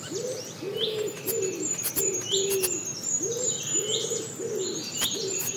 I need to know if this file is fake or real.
real